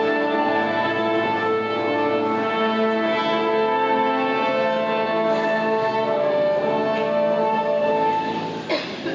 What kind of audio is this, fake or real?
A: real